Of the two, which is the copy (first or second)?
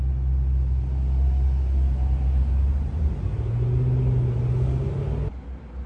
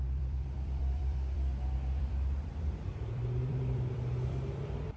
second